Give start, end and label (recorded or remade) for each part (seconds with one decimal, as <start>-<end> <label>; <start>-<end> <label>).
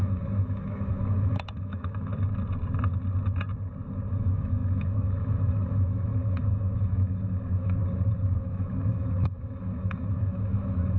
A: 0.0-2.1 remade; 2.1-4.1 recorded; 4.1-7.8 remade; 7.8-8.4 recorded; 8.4-11.0 remade